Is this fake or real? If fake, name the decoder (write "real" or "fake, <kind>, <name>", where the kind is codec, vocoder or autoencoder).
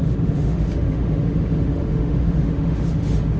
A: fake, autoencoder, DAC-VAE